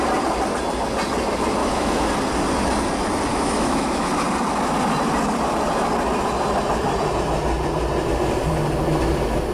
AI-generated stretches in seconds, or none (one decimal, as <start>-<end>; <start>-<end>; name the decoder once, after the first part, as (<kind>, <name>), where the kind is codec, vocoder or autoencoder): 1.6-2.1 (autoencoder, DAC-VAE); 3.3-4.1